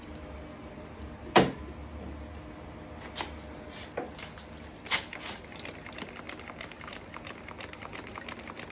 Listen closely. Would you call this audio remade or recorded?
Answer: recorded